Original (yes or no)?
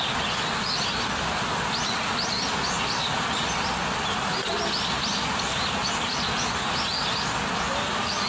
yes